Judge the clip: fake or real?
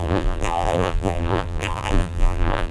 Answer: fake